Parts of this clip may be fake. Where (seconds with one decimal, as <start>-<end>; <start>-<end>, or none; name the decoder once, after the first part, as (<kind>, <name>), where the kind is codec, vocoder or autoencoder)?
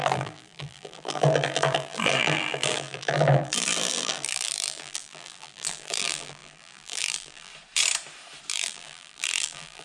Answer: 0.0-7.5 (vocoder, BigVGAN v2); 8.5-9.8